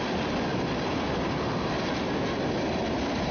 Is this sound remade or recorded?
recorded